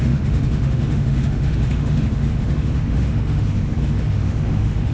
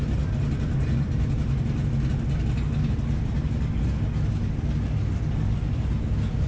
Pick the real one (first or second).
second